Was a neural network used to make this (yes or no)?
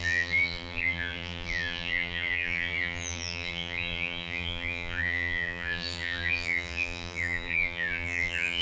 yes